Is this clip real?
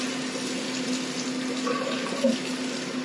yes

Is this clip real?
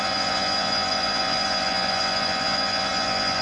no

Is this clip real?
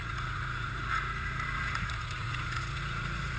no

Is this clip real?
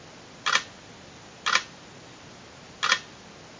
yes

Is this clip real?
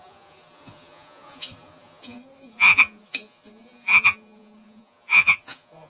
no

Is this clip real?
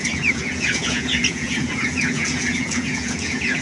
no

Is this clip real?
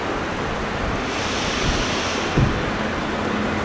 yes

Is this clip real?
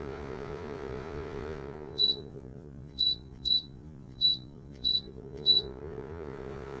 no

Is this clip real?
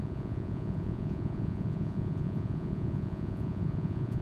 no